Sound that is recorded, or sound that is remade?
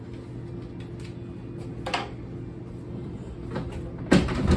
recorded